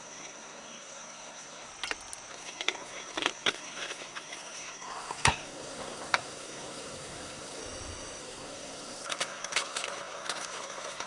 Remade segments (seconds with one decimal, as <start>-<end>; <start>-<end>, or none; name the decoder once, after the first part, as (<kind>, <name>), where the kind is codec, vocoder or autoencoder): 0.0-1.7 (codec, SNAC); 2.3-7.6; 8.2-11.1